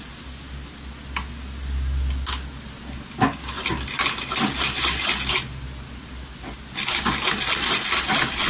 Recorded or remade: recorded